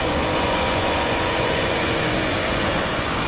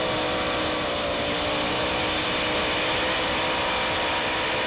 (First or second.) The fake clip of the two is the first